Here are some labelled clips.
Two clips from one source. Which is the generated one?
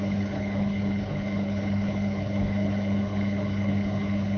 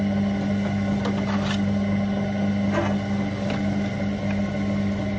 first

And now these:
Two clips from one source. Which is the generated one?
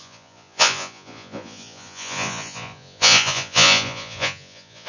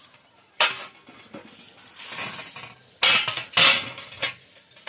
first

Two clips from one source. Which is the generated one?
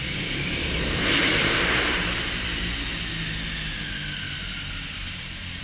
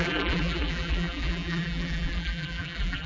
second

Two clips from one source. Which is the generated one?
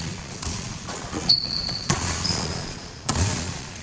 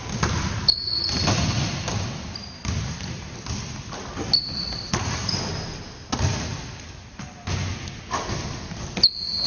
first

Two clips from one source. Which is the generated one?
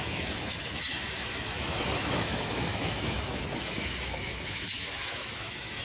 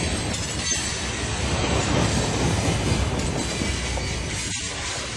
first